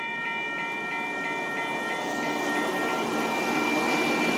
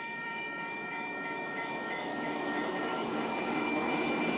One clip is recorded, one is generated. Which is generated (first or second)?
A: second